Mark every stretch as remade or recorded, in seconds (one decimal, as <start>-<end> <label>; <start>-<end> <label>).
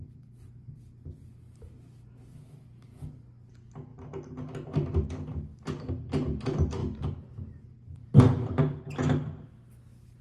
0.0-6.8 recorded; 6.8-8.8 remade; 8.8-10.2 recorded